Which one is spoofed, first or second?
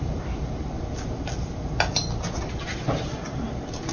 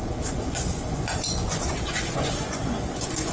second